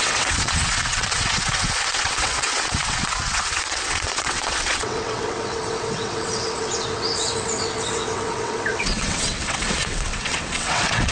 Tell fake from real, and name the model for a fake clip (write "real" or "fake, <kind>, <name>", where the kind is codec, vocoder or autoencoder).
fake, vocoder, WaveNeXt